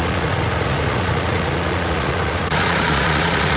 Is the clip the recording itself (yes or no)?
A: no